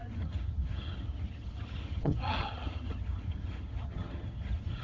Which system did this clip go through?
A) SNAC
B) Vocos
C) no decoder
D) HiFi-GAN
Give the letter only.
D